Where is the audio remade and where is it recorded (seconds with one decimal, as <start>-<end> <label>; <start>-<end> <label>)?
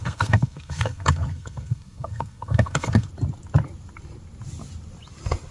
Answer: 0.0-3.1 remade; 3.1-5.5 recorded